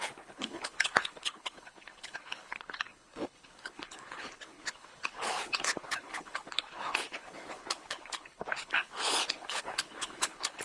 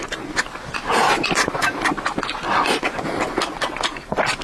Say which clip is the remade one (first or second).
first